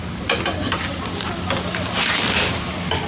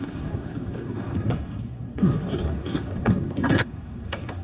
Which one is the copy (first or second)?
second